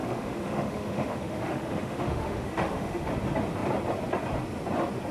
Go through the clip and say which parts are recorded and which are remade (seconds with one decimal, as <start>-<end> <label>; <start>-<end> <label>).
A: 0.0-3.1 remade; 3.1-5.1 recorded